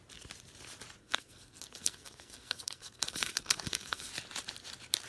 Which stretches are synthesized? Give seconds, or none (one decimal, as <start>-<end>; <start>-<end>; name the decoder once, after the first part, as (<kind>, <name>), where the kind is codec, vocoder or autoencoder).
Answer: 1.0-4.1 (codec, SNAC)